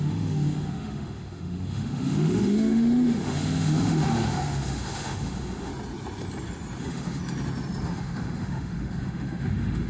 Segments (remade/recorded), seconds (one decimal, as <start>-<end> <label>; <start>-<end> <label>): 0.0-5.7 remade; 5.7-6.8 recorded; 6.8-7.2 remade; 7.2-7.9 recorded; 7.9-9.9 remade